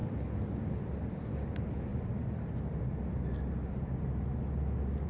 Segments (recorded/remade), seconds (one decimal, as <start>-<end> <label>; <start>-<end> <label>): 0.0-5.1 recorded